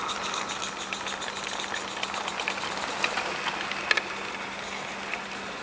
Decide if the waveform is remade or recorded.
recorded